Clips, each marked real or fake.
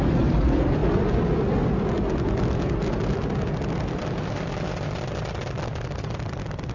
real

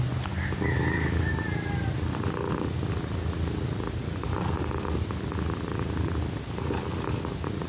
real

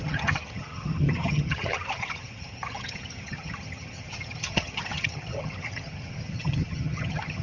fake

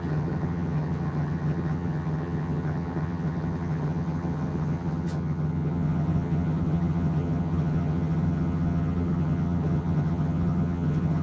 fake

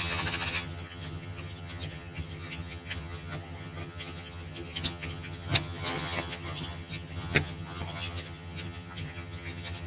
fake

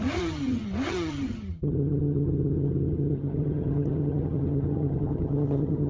fake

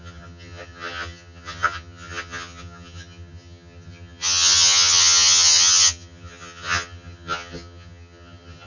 fake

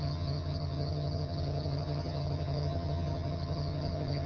fake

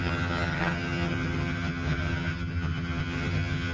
fake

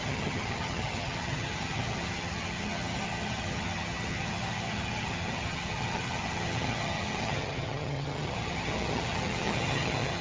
fake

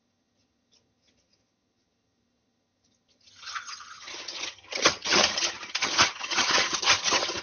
fake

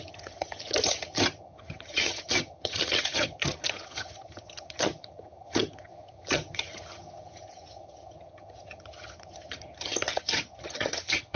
fake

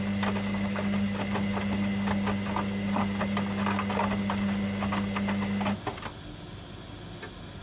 real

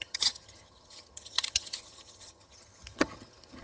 fake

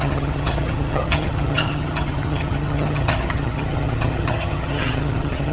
fake